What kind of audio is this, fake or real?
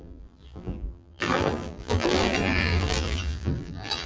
fake